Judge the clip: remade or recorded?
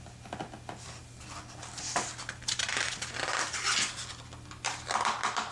recorded